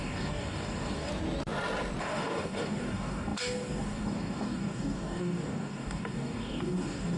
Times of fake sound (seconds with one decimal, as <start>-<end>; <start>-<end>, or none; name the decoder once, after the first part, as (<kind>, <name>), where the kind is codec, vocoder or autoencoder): 0.0-1.1 (codec, DAC); 2.0-7.2